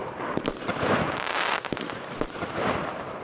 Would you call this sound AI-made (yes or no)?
yes